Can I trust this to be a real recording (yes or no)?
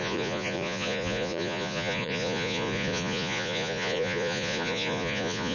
no